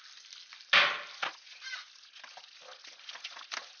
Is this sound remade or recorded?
recorded